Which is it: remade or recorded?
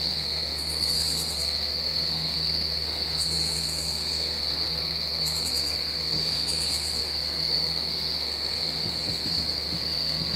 remade